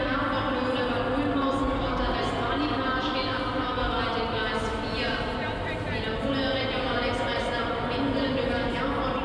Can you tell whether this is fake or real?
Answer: real